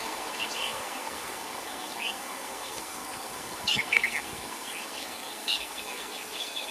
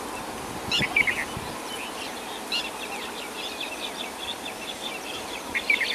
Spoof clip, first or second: first